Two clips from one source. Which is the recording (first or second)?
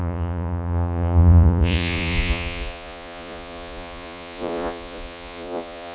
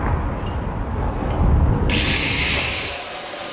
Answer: second